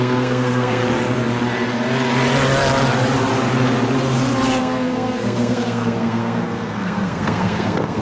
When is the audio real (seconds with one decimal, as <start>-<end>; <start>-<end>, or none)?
0.8-4.6